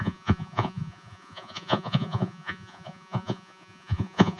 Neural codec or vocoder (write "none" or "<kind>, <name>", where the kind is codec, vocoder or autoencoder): vocoder, Vocos